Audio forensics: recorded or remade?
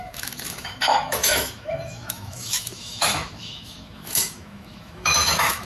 remade